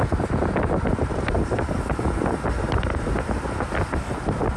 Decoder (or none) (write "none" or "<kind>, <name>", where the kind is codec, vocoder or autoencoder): none